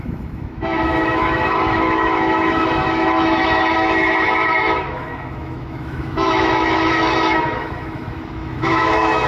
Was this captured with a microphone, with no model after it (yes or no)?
no